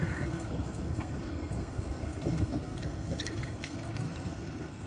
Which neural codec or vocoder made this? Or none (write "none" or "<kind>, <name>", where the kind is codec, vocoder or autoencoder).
codec, SNAC